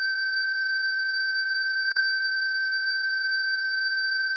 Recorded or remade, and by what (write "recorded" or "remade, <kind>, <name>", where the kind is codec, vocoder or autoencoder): remade, vocoder, Vocos